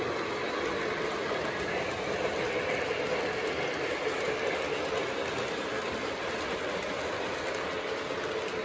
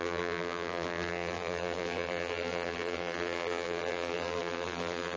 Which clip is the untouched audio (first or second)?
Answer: first